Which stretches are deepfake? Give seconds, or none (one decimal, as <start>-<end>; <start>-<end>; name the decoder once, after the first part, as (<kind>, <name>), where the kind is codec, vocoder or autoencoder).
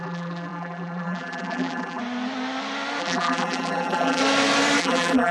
0.0-2.0 (vocoder, BigVGAN v2); 3.0-4.2; 4.8-5.3